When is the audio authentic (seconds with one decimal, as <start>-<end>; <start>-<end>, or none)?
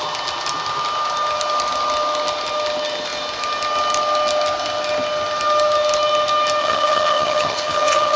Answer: 0.0-6.6